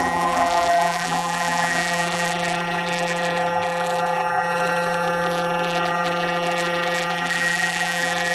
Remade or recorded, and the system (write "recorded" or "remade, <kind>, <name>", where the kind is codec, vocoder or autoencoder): remade, vocoder, BigVGAN v2